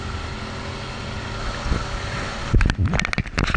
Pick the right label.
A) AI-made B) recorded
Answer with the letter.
B